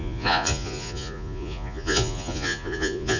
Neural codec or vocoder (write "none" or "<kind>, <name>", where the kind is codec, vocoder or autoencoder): vocoder, Vocos